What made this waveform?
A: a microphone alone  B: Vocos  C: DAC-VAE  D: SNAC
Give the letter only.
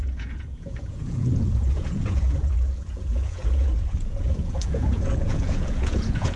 B